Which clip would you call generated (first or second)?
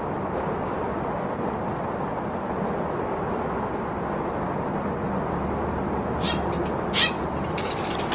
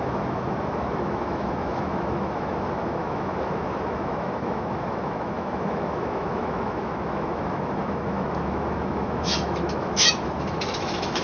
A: second